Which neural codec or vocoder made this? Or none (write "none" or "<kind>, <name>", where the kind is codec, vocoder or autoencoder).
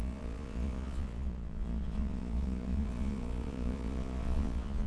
vocoder, Vocos